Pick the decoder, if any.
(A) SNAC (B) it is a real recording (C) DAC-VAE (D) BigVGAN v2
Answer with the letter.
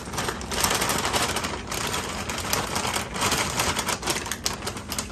B